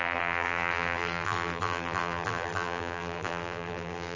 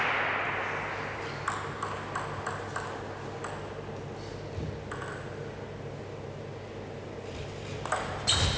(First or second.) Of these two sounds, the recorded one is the second